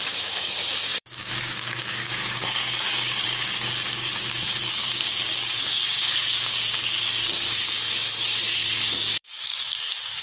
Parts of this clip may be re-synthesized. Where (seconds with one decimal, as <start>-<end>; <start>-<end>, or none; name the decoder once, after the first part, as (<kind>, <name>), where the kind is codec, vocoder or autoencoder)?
0.0-10.2 (codec, DAC)

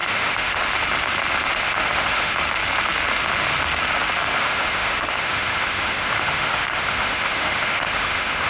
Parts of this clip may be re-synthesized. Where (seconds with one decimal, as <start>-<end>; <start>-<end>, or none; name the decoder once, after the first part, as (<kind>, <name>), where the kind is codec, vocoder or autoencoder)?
0.0-0.6 (autoencoder, DAC-VAE); 1.5-2.3; 4.3-8.5

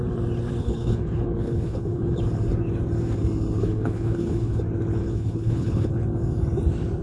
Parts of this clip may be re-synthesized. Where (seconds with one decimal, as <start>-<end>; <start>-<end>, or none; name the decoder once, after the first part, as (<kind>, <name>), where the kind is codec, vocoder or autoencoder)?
0.6-2.2 (codec, HILCodec); 3.6-4.6; 5.0-5.9

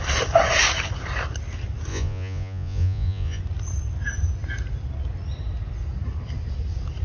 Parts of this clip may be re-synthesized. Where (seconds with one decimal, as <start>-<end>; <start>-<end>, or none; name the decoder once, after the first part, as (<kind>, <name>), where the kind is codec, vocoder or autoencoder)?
1.9-3.4 (vocoder, Vocos)

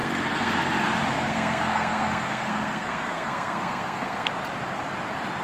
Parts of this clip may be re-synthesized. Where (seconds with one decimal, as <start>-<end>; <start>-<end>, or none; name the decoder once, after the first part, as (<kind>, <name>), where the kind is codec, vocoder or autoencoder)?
0.0-0.5 (codec, SNAC); 1.1-4.3